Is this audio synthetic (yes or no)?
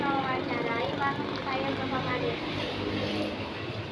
no